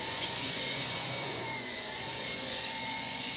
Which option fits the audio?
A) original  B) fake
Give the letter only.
B